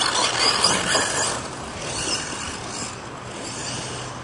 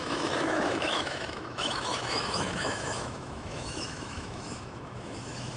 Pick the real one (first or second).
first